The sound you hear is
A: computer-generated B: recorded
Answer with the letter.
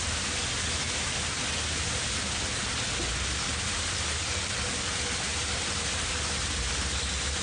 B